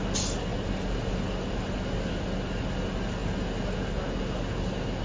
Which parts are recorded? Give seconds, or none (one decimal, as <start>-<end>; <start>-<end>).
0.0-5.0